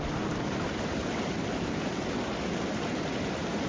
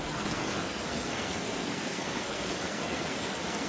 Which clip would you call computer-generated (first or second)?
second